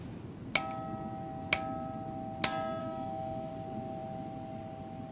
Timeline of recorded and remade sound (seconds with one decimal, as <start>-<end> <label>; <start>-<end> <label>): 0.0-2.8 recorded; 2.8-3.5 remade; 3.5-5.1 recorded

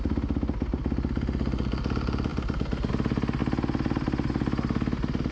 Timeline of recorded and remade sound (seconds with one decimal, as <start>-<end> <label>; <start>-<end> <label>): 0.0-2.3 recorded; 2.3-2.9 remade; 2.9-5.3 recorded

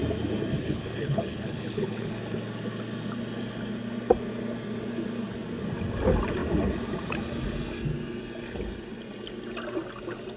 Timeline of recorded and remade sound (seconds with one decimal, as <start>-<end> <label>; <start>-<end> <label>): 0.0-0.6 recorded; 0.6-2.1 remade; 2.1-10.4 recorded